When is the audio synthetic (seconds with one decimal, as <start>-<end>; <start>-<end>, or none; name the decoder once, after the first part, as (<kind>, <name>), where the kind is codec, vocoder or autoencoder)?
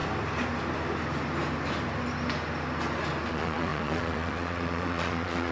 3.3-5.5 (vocoder, Vocos)